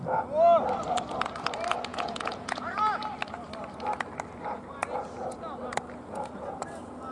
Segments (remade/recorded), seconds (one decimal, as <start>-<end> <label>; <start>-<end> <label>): 0.0-1.9 recorded; 1.9-2.8 remade; 2.8-7.1 recorded